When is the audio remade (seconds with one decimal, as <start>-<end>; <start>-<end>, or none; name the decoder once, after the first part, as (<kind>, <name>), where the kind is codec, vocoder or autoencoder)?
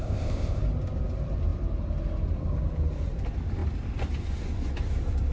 0.0-0.6 (codec, ZipCodec)